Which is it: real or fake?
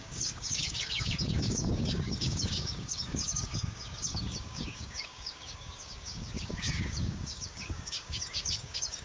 fake